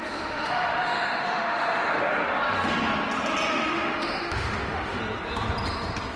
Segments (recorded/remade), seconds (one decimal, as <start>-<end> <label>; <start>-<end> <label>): 0.0-2.1 remade; 2.1-3.5 recorded; 3.5-5.0 remade; 5.0-6.2 recorded